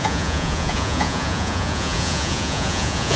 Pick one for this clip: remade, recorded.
remade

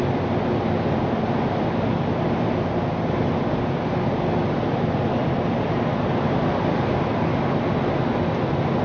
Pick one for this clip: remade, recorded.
recorded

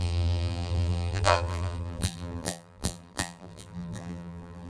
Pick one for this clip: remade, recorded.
remade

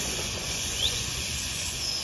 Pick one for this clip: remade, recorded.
remade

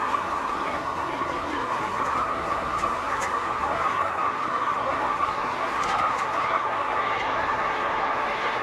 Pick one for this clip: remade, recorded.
remade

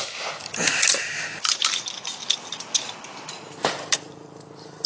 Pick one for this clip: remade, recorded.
recorded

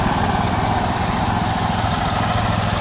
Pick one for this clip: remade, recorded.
recorded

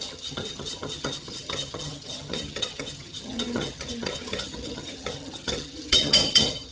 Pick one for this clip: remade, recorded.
remade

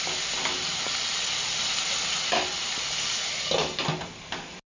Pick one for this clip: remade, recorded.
recorded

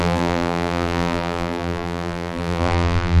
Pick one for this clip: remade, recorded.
remade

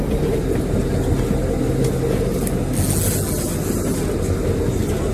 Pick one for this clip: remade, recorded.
recorded